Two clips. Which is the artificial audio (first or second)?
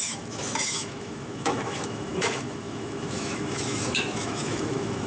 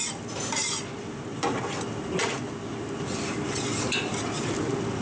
first